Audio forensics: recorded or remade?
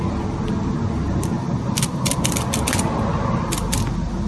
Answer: recorded